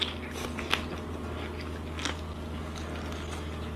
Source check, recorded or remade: recorded